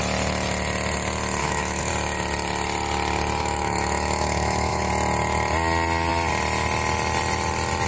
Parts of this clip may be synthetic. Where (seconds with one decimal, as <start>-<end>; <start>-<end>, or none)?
1.4-1.9; 3.4-4.9